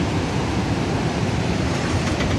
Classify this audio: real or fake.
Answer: fake